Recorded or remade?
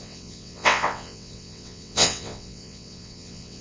remade